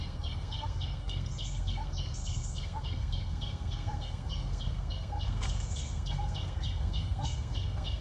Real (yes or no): no